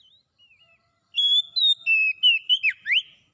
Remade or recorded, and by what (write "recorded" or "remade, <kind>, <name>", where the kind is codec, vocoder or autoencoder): recorded